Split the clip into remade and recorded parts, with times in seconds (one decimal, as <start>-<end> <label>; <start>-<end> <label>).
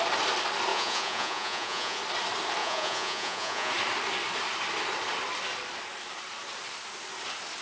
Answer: 0.0-0.7 recorded; 0.7-2.0 remade; 2.0-2.6 recorded; 2.6-3.7 remade; 3.7-7.6 recorded